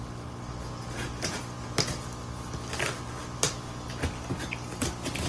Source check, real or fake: real